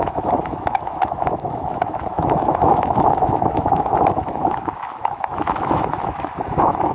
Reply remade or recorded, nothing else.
remade